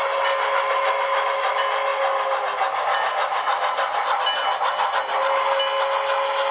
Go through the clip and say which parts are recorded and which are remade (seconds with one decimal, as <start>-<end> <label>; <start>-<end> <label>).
0.0-6.5 recorded